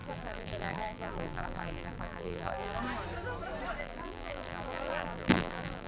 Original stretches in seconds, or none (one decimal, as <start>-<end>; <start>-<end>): 2.8-3.8